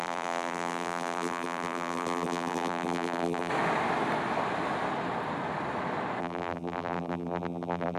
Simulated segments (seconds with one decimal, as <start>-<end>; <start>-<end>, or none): 0.0-3.5; 6.2-8.0

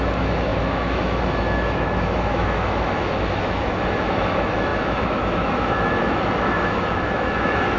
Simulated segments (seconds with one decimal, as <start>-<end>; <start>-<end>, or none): 0.0-7.8